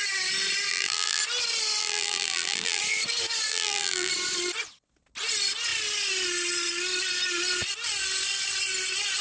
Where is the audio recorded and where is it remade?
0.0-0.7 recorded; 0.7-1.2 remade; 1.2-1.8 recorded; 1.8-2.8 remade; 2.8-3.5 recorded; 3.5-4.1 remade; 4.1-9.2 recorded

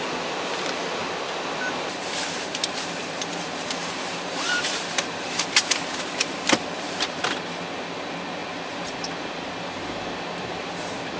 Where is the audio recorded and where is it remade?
0.0-3.0 recorded; 3.0-7.2 remade; 7.2-8.4 recorded; 8.4-11.2 remade

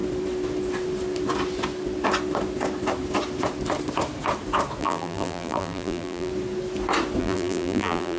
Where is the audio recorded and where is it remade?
0.0-4.8 recorded; 4.8-6.3 remade; 6.3-7.2 recorded; 7.2-8.2 remade